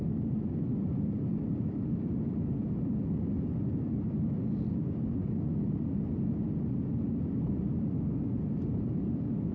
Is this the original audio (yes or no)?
yes